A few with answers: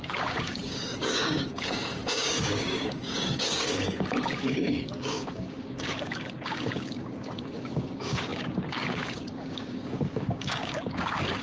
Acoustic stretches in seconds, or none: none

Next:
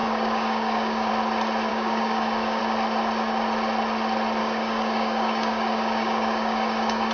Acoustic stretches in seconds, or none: 1.1-1.7; 2.6-4.4

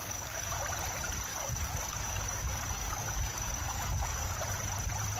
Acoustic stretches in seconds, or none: 0.6-1.3; 4.4-5.2

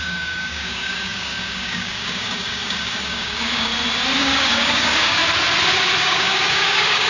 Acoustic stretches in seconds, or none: 3.7-4.2; 5.2-6.0

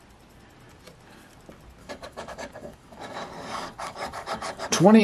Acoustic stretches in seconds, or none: 0.0-1.8